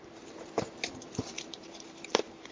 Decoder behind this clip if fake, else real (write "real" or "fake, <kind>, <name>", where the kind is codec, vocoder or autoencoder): fake, vocoder, BigVGAN v2